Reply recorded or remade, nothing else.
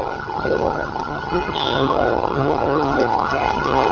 remade